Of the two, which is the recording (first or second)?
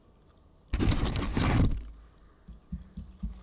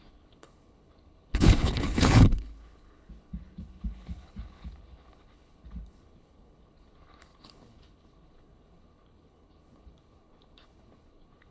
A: first